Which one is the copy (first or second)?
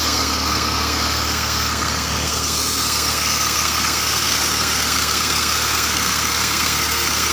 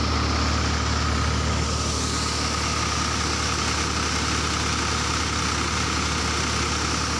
first